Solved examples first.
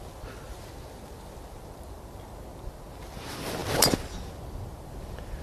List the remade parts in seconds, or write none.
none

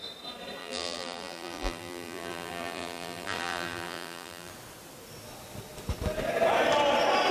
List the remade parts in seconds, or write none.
0.6-4.5 (vocoder, BigVGAN v2)

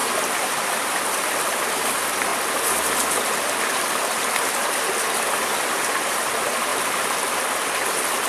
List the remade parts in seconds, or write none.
0.0-1.3 (vocoder, BigVGAN v2)

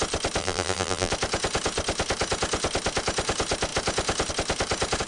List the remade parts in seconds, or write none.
0.4-1.1 (vocoder, BigVGAN v2)

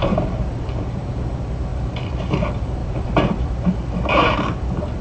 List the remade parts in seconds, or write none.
0.0-0.9 (vocoder, BigVGAN v2); 1.7-2.3; 2.8-5.0

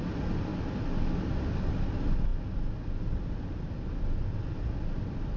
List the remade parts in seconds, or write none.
0.0-0.5 (vocoder, BigVGAN v2); 1.5-2.3; 3.0-5.4

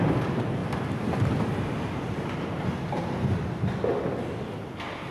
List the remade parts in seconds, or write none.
0.6-3.7 (vocoder, BigVGAN v2)